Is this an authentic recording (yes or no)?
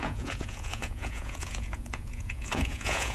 no